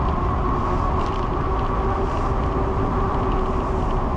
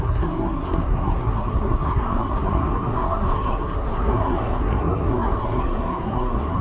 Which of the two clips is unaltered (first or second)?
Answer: first